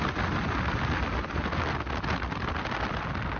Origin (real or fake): real